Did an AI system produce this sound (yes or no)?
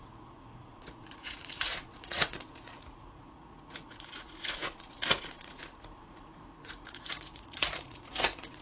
yes